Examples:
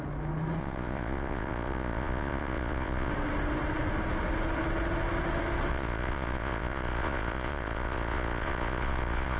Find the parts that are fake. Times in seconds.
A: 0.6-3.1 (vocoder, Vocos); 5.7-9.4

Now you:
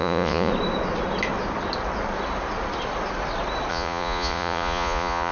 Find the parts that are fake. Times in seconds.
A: 0.0-0.5 (vocoder, Vocos); 3.7-5.3